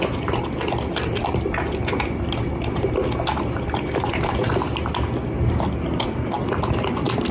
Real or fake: real